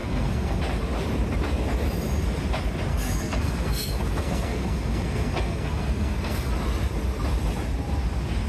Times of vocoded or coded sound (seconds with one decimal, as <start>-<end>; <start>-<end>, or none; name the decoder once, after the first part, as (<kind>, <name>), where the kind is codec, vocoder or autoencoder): 0.0-0.6 (codec, SNAC); 2.9-6.5